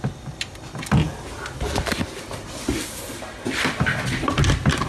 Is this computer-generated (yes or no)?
no